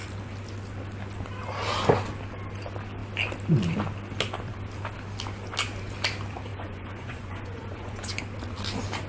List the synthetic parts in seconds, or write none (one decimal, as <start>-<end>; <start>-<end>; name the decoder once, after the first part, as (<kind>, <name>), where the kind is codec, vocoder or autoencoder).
6.5-8.2 (vocoder, Vocos)